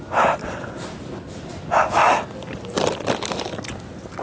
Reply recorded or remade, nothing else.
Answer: recorded